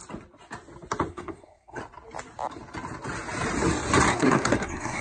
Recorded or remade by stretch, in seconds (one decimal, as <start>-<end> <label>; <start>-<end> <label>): 0.0-1.1 recorded; 1.1-1.8 remade; 1.8-4.1 recorded; 4.1-5.0 remade